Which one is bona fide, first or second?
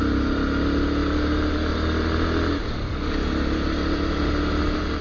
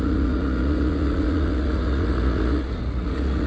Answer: first